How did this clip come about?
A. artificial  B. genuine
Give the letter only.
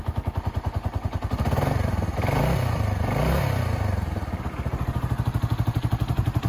B